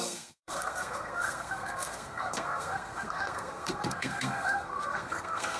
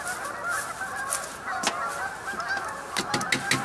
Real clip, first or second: second